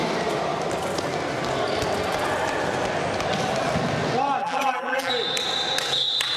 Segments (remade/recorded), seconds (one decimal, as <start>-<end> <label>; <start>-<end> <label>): 0.0-4.4 recorded; 4.4-5.1 remade; 5.1-6.4 recorded